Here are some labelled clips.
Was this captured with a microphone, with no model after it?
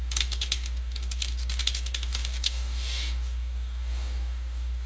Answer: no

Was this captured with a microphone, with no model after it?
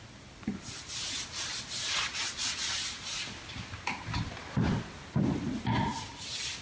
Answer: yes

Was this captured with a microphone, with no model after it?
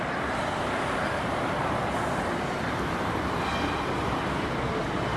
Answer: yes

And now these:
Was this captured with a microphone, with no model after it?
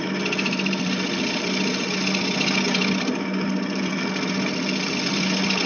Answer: yes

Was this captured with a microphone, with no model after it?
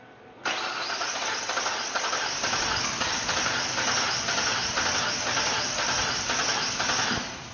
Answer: yes